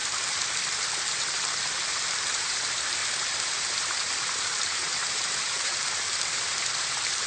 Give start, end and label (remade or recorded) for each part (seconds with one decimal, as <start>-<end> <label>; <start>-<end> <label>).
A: 0.0-0.9 recorded; 0.9-7.3 remade